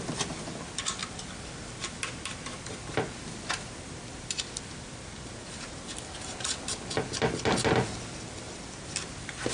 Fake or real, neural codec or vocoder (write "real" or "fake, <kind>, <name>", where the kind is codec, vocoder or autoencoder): real